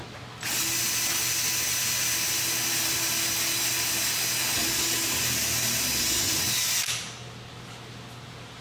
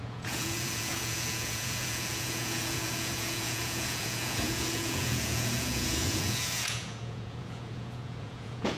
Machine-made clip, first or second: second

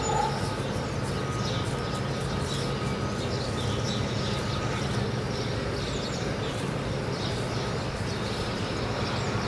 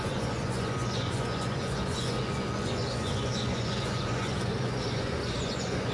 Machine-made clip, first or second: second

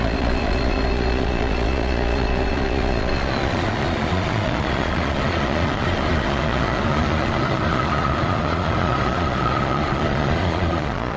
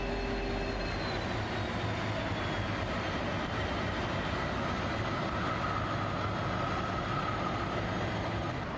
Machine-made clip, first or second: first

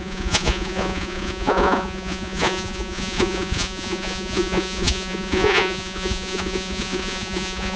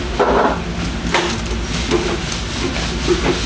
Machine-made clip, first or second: first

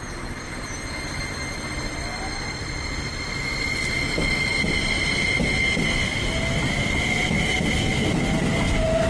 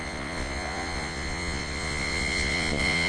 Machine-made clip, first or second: second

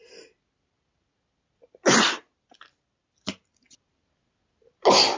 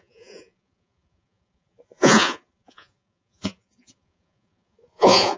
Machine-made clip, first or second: second